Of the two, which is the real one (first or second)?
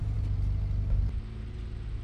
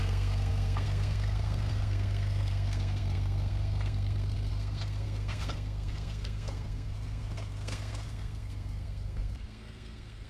first